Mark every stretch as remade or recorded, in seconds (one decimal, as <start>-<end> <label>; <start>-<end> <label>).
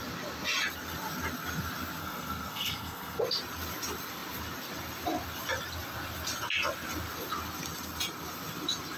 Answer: 0.0-2.0 recorded; 2.0-3.2 remade; 3.2-9.0 recorded